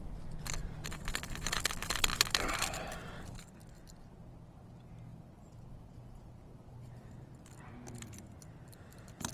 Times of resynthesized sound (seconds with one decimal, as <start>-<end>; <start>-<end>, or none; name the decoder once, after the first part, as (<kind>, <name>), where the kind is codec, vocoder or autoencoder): 0.6-1.5 (vocoder, BigVGAN v2); 5.1-7.7